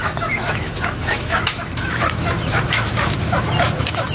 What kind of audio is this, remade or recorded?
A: remade